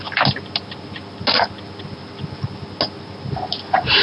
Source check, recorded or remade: recorded